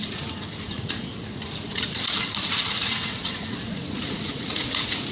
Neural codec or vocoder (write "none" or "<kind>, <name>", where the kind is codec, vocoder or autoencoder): vocoder, Vocos